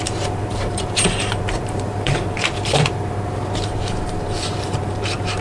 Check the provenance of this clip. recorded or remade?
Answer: remade